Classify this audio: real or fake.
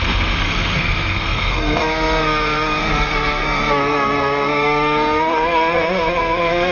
fake